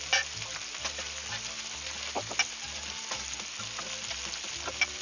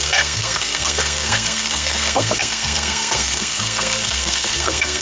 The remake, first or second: second